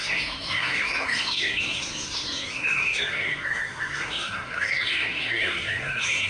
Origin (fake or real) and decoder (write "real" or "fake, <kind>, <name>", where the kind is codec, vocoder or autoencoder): fake, codec, SNAC